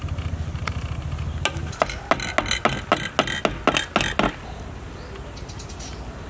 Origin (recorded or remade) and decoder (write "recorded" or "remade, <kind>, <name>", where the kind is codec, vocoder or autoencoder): recorded